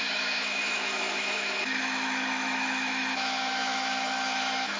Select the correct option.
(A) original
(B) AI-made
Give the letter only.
B